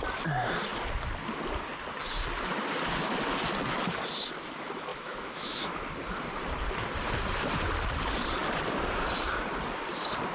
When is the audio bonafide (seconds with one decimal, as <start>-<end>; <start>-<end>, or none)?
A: 0.0-4.9; 5.8-10.3